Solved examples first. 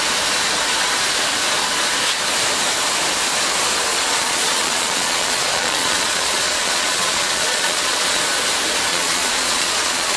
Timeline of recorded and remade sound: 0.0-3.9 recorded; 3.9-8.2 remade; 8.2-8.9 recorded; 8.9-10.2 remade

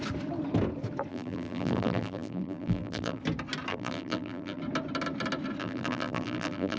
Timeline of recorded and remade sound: 0.0-1.1 recorded; 1.1-3.2 remade; 3.2-3.7 recorded; 3.7-4.6 remade; 4.6-5.6 recorded; 5.6-6.8 remade

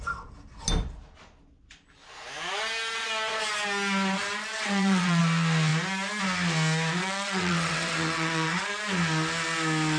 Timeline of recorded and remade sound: 0.0-4.5 recorded; 4.5-5.2 remade; 5.2-7.0 recorded; 7.0-8.8 remade; 8.8-10.0 recorded

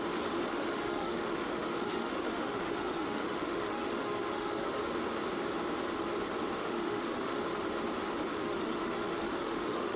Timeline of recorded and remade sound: 0.0-0.5 recorded; 0.5-4.8 remade; 4.8-6.6 recorded; 6.6-7.4 remade; 7.4-8.3 recorded; 8.3-10.0 remade